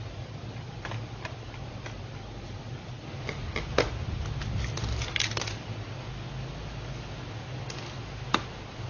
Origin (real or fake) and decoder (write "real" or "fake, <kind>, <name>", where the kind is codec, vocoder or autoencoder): real